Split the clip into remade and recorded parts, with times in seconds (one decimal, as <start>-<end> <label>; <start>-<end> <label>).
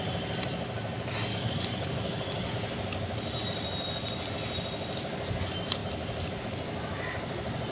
0.0-1.3 recorded; 1.3-2.5 remade; 2.5-7.7 recorded